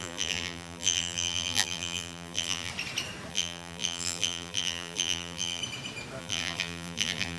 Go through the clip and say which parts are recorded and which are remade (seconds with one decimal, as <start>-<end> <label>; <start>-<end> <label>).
0.0-2.7 remade; 2.7-3.3 recorded; 3.3-5.6 remade; 5.6-6.2 recorded; 6.2-7.4 remade